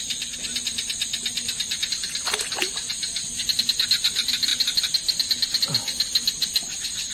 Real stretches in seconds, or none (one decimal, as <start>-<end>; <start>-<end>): 0.0-7.1